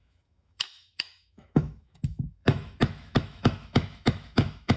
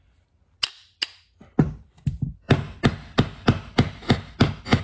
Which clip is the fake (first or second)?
first